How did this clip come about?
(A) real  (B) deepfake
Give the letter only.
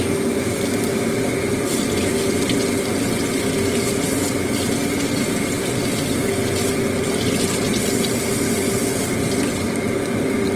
A